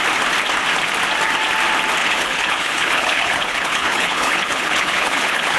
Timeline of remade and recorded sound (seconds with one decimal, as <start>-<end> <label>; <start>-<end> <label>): 0.0-2.0 recorded; 2.0-5.6 remade